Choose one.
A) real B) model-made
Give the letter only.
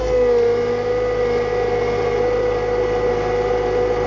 A